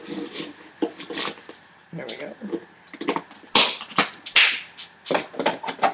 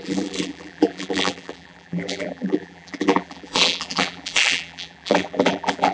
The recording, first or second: first